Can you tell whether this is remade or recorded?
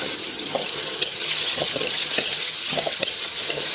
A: remade